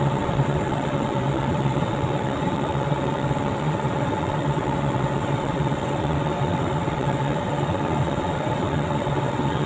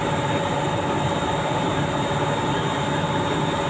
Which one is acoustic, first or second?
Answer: second